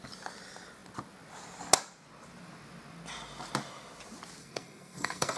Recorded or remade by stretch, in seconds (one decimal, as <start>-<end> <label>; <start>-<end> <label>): 0.0-4.4 recorded; 4.4-5.4 remade